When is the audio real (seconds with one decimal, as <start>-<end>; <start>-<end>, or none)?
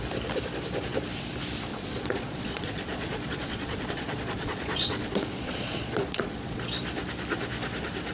0.0-1.7; 6.6-8.1